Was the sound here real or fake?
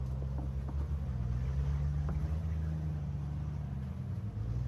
real